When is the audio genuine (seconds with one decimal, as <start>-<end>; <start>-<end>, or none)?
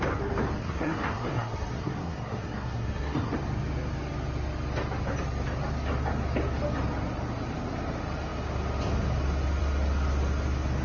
0.0-0.6; 3.3-10.8